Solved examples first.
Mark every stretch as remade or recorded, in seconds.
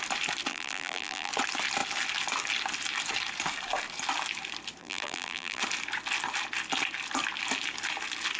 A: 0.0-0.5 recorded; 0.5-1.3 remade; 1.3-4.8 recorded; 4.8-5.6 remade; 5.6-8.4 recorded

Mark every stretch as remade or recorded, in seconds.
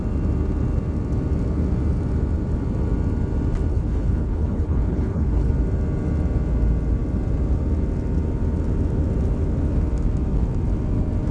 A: 0.0-3.7 recorded; 3.7-5.5 remade; 5.5-11.3 recorded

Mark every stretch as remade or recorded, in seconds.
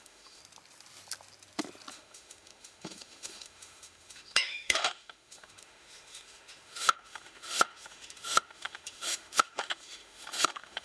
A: 0.0-0.4 remade; 0.4-1.9 recorded; 1.9-10.8 remade